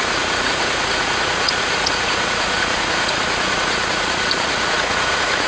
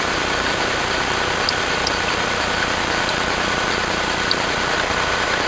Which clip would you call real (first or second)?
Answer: second